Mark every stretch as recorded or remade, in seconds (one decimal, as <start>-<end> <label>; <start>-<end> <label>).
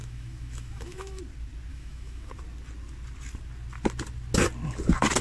0.0-1.2 remade; 1.2-1.7 recorded; 1.7-2.3 remade; 2.3-5.2 recorded